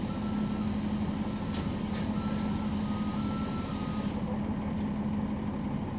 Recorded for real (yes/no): yes